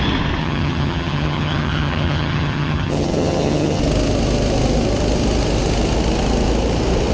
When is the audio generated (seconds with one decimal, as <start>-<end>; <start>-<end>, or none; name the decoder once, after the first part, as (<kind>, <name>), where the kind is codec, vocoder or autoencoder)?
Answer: 0.4-3.8 (vocoder, HiFi-GAN)